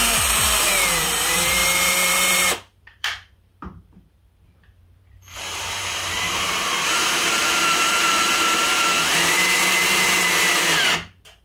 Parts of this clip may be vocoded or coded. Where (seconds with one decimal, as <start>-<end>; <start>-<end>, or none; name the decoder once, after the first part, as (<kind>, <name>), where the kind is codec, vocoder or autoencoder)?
0.0-11.4 (vocoder, BigVGAN v2)

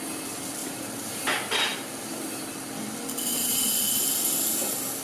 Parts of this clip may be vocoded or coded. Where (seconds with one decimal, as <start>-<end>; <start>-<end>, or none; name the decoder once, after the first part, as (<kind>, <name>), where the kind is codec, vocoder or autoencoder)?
0.6-1.2 (vocoder, BigVGAN v2)

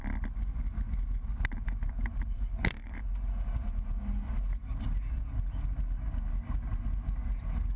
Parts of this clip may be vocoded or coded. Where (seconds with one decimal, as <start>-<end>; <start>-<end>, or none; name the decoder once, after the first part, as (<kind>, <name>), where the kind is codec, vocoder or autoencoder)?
1.3-4.0 (vocoder, BigVGAN v2)

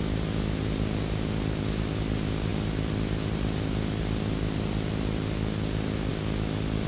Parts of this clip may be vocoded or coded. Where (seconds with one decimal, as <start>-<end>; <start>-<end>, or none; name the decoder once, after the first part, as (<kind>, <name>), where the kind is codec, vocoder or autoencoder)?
none

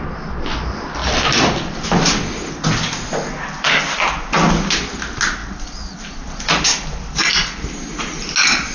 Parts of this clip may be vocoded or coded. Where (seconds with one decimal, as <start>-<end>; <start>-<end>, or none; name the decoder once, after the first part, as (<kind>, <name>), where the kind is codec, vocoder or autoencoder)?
1.0-2.2 (vocoder, BigVGAN v2); 5.4-6.0

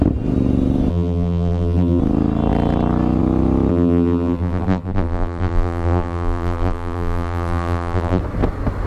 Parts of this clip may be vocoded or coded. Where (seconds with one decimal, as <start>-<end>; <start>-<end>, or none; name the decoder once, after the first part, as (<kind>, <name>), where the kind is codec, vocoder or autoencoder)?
0.9-2.0 (vocoder, BigVGAN v2); 3.7-8.2

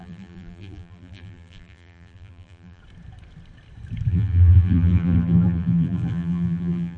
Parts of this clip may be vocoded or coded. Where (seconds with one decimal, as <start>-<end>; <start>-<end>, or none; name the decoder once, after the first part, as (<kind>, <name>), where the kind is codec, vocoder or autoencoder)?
0.0-2.8 (vocoder, BigVGAN v2); 4.1-7.0